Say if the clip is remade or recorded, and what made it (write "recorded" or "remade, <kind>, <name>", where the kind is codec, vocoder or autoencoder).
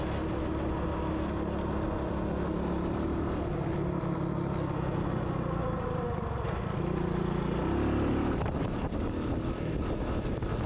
recorded